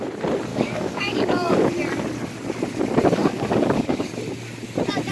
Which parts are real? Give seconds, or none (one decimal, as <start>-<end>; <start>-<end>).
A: 0.0-0.5; 1.7-3.2; 4.1-5.1